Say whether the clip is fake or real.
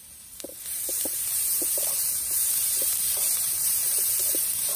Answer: fake